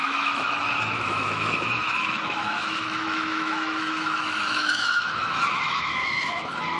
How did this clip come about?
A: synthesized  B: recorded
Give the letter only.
A